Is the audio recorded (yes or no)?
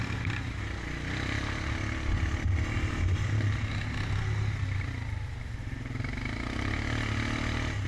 yes